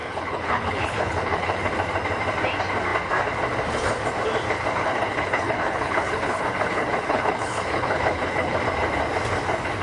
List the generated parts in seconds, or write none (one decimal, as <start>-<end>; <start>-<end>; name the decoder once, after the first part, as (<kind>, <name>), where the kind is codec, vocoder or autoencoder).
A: 0.0-1.7 (codec, HILCodec); 4.8-8.6